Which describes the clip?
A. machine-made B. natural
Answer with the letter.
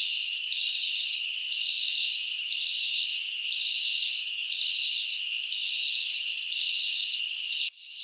A